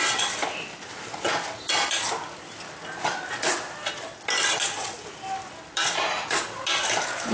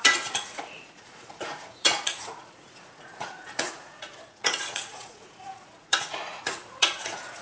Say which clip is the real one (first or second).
first